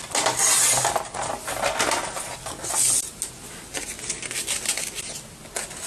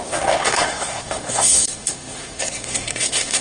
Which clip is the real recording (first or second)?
first